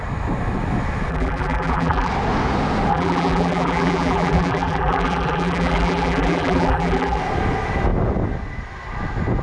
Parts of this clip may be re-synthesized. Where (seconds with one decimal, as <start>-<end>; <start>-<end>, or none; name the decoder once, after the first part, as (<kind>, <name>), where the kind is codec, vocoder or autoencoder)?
1.1-2.1 (vocoder, BigVGAN v2); 2.9-7.2